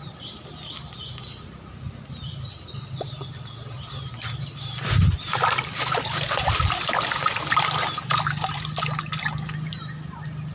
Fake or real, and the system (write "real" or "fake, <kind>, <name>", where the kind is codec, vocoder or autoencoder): real